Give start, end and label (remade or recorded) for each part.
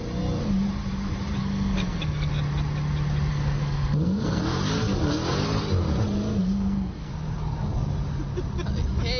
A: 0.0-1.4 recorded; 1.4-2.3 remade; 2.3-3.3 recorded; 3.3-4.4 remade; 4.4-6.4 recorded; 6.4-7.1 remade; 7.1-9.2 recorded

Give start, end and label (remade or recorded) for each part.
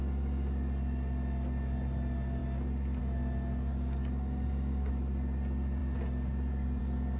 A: 0.0-3.7 recorded; 3.7-4.9 remade; 4.9-7.2 recorded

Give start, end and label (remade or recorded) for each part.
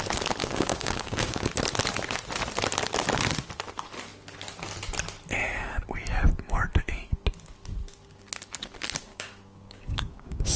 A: 0.0-0.4 recorded; 0.4-1.5 remade; 1.5-9.1 recorded; 9.1-10.6 remade